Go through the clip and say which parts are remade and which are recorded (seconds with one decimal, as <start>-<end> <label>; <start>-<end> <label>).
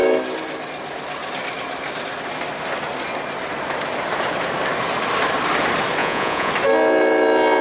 0.0-6.0 recorded; 6.0-6.5 remade; 6.5-7.6 recorded